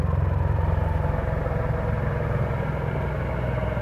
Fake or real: fake